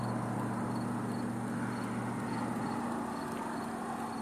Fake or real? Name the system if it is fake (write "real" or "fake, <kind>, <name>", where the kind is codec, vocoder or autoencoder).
real